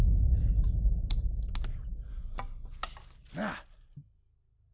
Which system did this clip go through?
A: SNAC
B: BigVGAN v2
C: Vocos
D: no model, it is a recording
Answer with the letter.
D